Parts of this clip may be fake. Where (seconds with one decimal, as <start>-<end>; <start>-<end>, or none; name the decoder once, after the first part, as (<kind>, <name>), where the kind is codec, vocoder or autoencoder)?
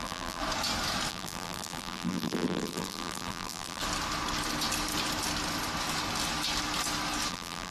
0.0-0.4 (vocoder, BigVGAN v2); 1.1-3.8; 7.3-7.7